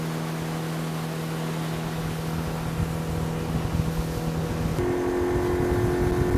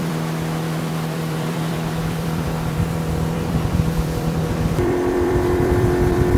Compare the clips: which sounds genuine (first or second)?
first